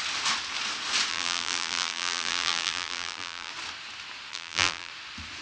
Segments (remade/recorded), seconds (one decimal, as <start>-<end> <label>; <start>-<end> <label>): 0.0-1.1 recorded; 1.1-3.5 remade; 3.5-4.3 recorded; 4.3-4.9 remade; 4.9-5.4 recorded